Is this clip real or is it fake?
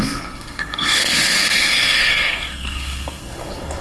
fake